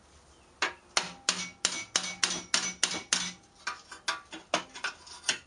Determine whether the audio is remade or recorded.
recorded